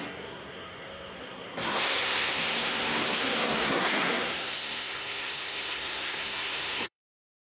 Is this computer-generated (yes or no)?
yes